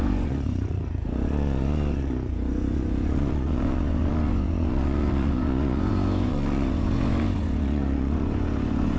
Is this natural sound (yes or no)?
no